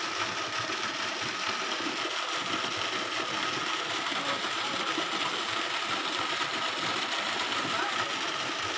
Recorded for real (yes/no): yes